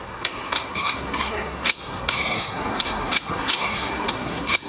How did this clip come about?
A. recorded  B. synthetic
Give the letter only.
B